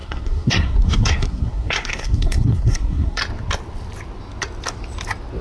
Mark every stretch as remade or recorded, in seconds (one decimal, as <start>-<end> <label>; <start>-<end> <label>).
0.0-3.2 remade; 3.2-5.4 recorded

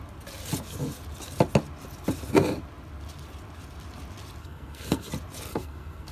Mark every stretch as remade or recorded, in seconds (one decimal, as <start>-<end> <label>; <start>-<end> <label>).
0.0-4.4 recorded; 4.4-5.1 remade; 5.1-5.5 recorded; 5.5-6.1 remade